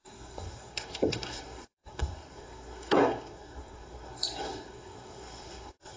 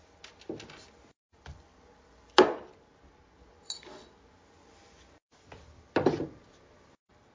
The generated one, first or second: first